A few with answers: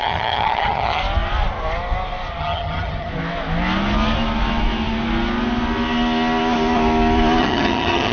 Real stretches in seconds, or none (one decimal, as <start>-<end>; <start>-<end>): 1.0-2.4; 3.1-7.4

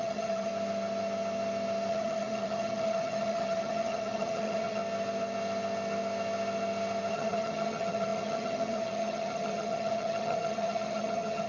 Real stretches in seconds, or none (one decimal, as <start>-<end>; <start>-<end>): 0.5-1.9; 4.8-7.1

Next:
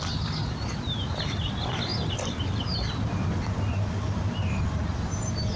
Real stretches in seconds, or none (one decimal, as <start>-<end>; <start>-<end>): 0.0-5.6